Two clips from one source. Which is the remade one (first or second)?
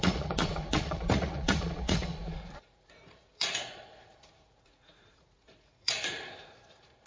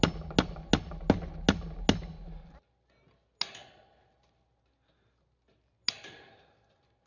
first